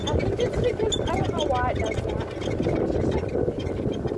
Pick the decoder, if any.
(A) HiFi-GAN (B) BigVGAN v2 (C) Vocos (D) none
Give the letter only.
D